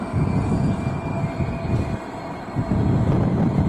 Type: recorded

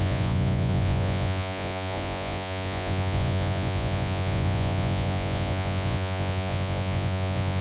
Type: remade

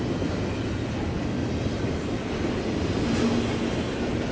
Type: recorded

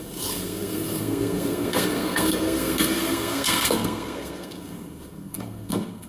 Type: remade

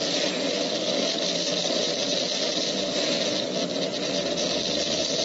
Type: recorded